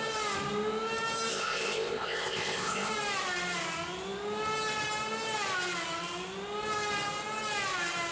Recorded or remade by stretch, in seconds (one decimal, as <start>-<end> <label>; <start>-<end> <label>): 0.0-1.3 recorded; 1.3-2.9 remade; 2.9-8.1 recorded

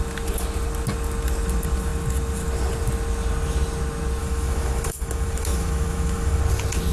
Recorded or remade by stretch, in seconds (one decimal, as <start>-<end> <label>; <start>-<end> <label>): 0.0-4.2 recorded; 4.2-6.4 remade; 6.4-6.9 recorded

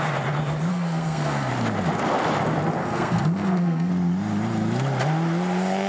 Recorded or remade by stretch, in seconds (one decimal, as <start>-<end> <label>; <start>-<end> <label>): 0.0-0.7 recorded; 0.7-1.5 remade; 1.5-2.8 recorded; 2.8-3.9 remade; 3.9-5.9 recorded

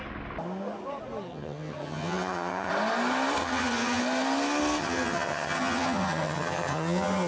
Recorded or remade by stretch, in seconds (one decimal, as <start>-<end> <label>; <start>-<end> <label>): 0.0-1.3 recorded; 1.3-2.7 remade; 2.7-3.4 recorded; 3.4-4.0 remade; 4.0-4.8 recorded; 4.8-7.3 remade

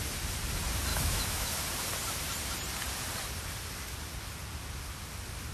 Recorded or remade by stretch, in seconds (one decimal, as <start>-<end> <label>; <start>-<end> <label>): 0.0-0.9 recorded; 0.9-1.5 remade; 1.5-5.5 recorded

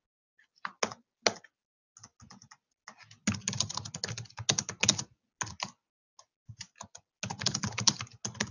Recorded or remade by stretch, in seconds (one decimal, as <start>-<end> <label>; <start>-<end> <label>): 0.0-8.5 recorded

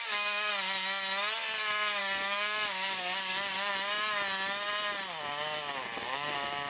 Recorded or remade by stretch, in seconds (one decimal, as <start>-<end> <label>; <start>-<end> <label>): 0.0-0.5 remade; 0.5-2.0 recorded; 2.0-3.7 remade; 3.7-6.0 recorded; 6.0-6.7 remade